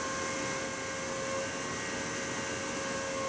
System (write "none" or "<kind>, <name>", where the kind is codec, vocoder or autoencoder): none